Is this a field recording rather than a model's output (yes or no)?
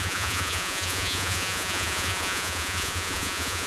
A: no